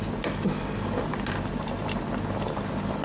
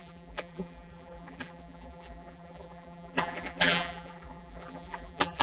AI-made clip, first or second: second